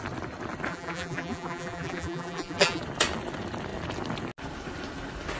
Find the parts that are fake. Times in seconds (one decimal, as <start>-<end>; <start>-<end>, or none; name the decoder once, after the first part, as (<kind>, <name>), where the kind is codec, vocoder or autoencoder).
0.7-2.8 (vocoder, BigVGAN v2)